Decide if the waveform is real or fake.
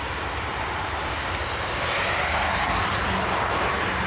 fake